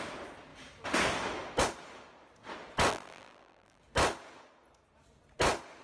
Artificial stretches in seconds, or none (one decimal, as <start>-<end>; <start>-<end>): 2.9-3.8